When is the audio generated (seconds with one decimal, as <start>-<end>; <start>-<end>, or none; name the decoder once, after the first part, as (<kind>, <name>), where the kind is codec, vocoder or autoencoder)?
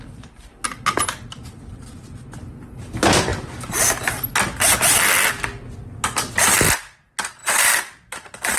7.4-8.6 (vocoder, BigVGAN v2)